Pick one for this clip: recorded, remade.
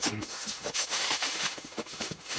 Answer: remade